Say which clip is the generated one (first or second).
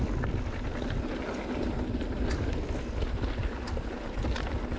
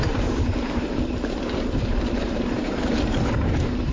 second